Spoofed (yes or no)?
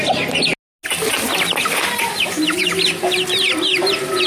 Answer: no